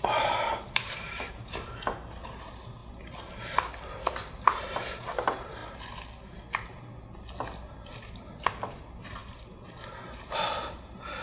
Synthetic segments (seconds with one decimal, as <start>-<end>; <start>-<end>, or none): 0.0-2.8; 4.1-5.6; 8.1-11.2